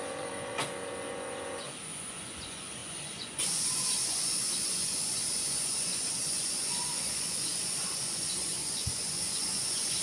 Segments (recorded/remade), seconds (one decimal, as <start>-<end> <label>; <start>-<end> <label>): 0.0-10.0 remade